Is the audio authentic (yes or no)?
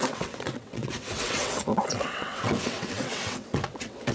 no